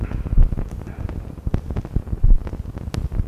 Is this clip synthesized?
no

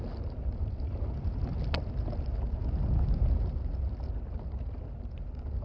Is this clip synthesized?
no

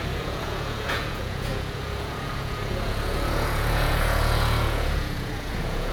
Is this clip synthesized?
yes